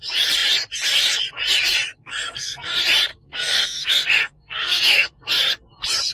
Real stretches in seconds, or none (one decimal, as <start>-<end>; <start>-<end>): 0.0-1.9; 2.7-3.1; 5.2-6.1